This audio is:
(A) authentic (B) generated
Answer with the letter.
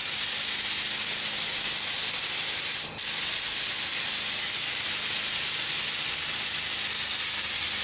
A